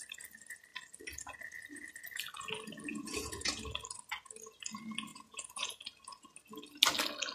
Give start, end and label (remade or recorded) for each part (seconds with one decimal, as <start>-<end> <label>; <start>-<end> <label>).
0.0-2.9 recorded; 2.9-3.5 remade; 3.5-5.1 recorded; 5.1-5.8 remade; 5.8-7.3 recorded